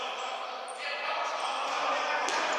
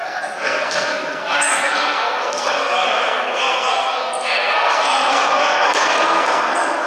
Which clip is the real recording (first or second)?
first